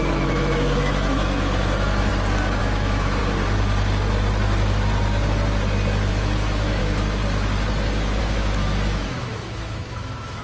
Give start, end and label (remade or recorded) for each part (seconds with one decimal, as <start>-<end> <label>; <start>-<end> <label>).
0.0-2.1 remade; 2.1-2.6 recorded; 2.6-3.2 remade; 3.2-6.1 recorded; 6.1-6.8 remade; 6.8-8.2 recorded; 8.2-10.4 remade